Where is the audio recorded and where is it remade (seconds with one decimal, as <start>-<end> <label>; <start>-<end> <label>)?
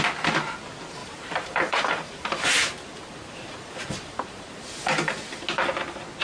0.0-1.0 recorded; 1.0-4.5 remade; 4.5-6.2 recorded